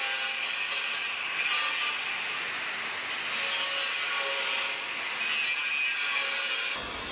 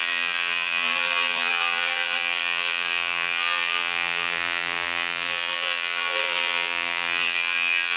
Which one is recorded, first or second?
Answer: first